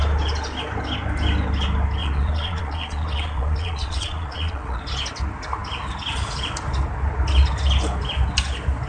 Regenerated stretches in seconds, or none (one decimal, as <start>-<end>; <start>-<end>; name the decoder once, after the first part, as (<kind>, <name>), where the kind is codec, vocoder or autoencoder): 2.0-4.8 (vocoder, Vocos)